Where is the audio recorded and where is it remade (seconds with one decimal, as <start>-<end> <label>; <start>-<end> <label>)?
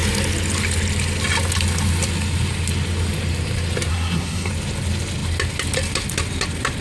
0.0-3.9 recorded; 3.9-4.5 remade; 4.5-6.8 recorded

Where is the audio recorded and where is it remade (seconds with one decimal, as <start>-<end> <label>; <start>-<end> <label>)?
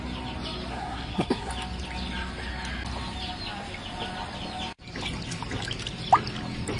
0.0-0.7 recorded; 0.7-1.5 remade; 1.5-6.8 recorded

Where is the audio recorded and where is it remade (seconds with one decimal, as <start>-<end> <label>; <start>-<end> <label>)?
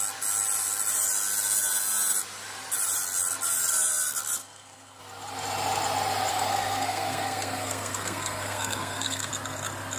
0.0-4.4 recorded; 4.4-5.0 remade; 5.0-6.3 recorded; 6.3-9.3 remade; 9.3-10.0 recorded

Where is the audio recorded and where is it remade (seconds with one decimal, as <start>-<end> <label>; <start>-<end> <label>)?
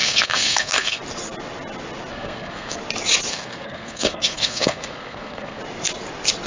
0.0-1.0 remade; 1.0-2.1 recorded; 2.1-2.8 remade; 2.8-3.3 recorded; 3.3-5.6 remade; 5.6-6.5 recorded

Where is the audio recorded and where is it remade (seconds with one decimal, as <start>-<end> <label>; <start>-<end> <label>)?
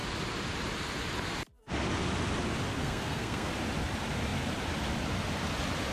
0.0-2.8 recorded; 2.8-3.5 remade; 3.5-5.9 recorded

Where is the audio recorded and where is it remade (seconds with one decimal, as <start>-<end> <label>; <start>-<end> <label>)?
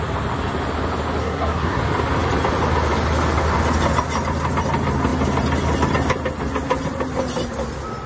0.0-1.2 recorded; 1.2-1.8 remade; 1.8-8.1 recorded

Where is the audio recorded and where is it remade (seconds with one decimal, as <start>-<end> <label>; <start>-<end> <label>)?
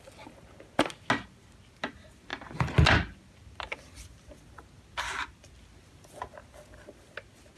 0.0-7.6 recorded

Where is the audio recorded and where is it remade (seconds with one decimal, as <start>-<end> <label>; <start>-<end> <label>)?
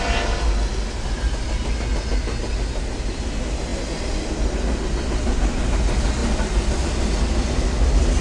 0.0-8.2 recorded